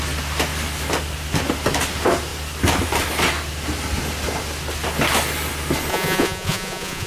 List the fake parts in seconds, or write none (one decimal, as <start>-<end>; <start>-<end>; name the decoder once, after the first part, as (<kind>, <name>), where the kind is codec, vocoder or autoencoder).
5.9-7.1 (vocoder, Vocos)